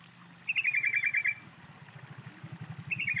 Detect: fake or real real